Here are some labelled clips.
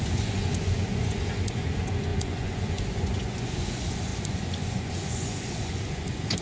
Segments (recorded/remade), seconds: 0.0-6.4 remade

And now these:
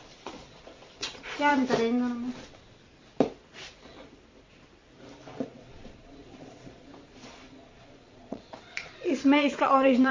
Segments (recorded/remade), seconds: 0.0-1.5 remade; 1.5-5.6 recorded; 5.6-10.1 remade

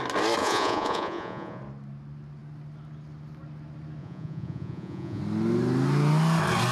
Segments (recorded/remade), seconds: 0.0-0.4 recorded; 0.4-1.6 remade; 1.6-4.0 recorded; 4.0-5.2 remade; 5.2-6.7 recorded